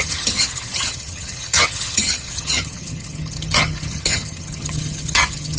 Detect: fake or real fake